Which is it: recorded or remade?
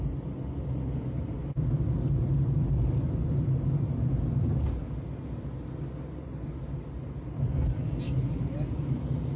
recorded